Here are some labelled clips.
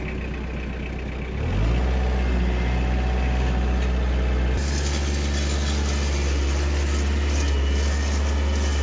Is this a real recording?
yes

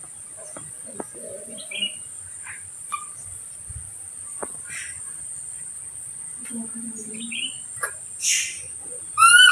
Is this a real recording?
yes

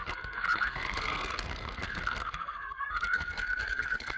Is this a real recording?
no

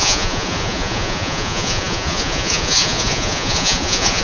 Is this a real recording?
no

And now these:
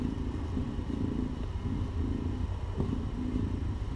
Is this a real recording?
yes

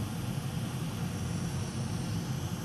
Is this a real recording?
yes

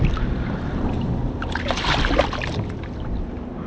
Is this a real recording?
yes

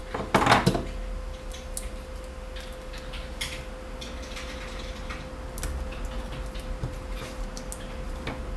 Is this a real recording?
yes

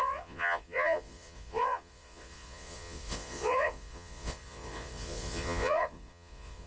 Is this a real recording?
no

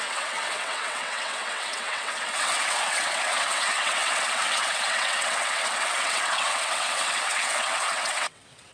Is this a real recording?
no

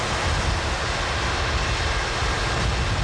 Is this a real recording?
yes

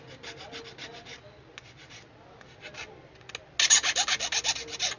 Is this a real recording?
yes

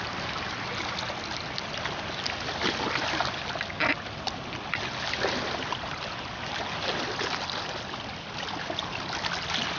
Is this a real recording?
yes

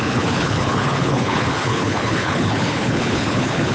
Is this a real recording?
no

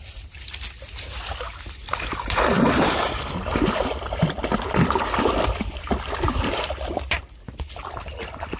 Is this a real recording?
no